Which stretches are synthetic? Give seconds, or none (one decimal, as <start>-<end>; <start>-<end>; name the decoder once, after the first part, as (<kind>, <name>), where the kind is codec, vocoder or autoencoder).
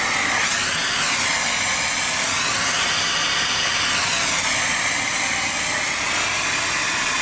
none